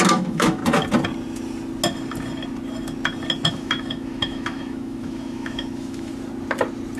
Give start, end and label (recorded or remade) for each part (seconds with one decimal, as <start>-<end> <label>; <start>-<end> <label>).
0.0-0.6 remade; 0.6-3.5 recorded; 3.5-6.1 remade; 6.1-7.0 recorded